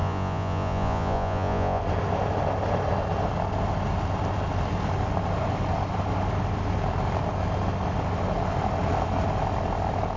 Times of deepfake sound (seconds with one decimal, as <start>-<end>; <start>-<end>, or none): 0.0-1.8